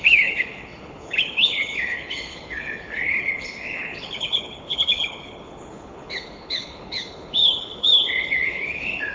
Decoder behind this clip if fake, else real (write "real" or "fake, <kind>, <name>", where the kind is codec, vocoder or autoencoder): fake, codec, HILCodec